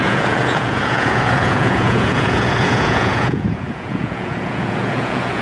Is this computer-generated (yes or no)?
yes